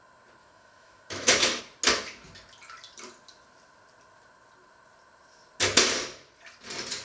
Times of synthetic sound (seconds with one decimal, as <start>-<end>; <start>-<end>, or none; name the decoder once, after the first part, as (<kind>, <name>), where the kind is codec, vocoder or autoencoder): 0.4-1.6 (autoencoder, DAC-VAE)